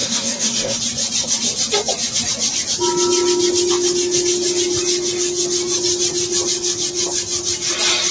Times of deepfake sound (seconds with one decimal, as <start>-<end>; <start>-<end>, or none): 0.0-0.8